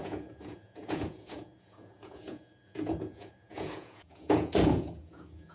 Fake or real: fake